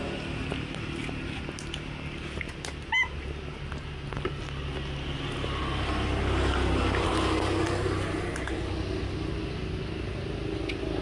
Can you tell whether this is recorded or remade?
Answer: recorded